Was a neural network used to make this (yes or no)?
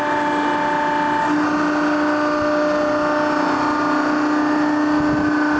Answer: no